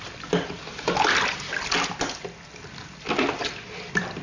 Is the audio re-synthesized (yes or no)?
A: no